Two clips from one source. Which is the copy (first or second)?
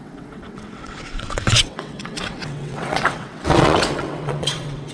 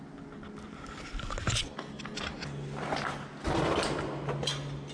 first